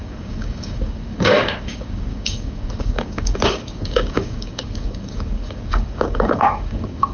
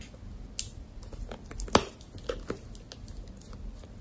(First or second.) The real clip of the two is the second